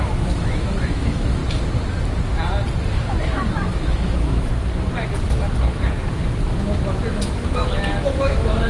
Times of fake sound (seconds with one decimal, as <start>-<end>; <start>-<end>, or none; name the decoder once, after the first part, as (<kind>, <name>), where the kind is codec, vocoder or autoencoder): 0.0-1.4 (autoencoder, DAC-VAE); 3.0-4.5; 7.1-8.7